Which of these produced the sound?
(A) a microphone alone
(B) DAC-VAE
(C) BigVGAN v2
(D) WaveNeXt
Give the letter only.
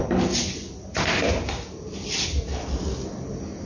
A